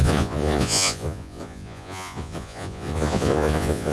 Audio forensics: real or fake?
fake